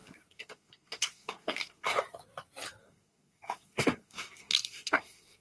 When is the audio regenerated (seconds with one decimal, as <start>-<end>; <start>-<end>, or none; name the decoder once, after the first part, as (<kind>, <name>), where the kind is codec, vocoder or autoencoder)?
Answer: 0.0-2.0 (codec, SNAC); 2.8-5.4

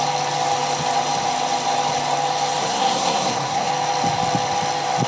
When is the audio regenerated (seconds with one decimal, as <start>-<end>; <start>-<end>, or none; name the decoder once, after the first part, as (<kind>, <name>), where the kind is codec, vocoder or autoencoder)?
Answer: 2.6-3.7 (codec, SNAC)

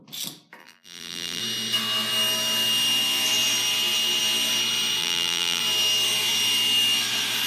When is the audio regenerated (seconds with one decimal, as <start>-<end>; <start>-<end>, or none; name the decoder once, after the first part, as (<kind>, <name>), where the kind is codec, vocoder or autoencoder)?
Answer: 0.6-1.4 (vocoder, BigVGAN v2); 5.0-5.6

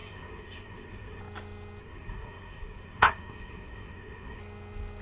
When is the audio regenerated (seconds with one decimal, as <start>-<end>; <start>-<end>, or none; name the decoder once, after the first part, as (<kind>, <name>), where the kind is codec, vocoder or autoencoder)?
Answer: 0.0-1.2 (codec, SNAC); 1.8-4.4

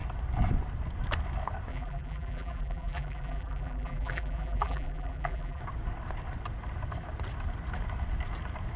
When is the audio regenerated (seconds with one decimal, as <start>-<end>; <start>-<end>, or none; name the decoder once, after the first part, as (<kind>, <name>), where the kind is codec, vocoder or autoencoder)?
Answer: 1.7-5.6 (vocoder, BigVGAN v2)

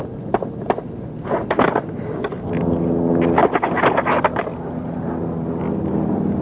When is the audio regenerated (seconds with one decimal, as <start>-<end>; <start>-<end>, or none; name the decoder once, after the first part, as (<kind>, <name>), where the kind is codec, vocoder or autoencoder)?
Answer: none

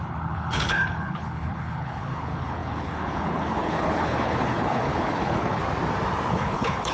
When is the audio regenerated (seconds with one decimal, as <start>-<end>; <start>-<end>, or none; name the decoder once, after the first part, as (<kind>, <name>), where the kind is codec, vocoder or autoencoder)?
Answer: 0.0-5.6 (codec, HILCodec); 6.3-6.9

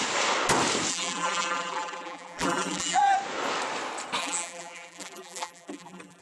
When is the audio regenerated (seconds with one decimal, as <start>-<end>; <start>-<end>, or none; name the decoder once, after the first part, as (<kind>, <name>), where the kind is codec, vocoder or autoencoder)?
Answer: 0.9-3.0 (vocoder, BigVGAN v2); 4.2-6.2